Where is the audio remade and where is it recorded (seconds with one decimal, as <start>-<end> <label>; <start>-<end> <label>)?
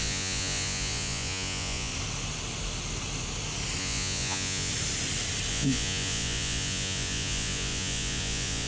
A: 0.0-1.9 remade; 1.9-3.8 recorded; 3.8-4.7 remade; 4.7-5.5 recorded; 5.5-8.7 remade